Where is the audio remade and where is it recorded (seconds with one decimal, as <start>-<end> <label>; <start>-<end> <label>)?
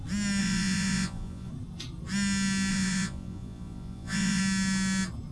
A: 0.0-0.4 recorded; 0.4-1.5 remade; 1.5-2.7 recorded; 2.7-4.4 remade; 4.4-5.3 recorded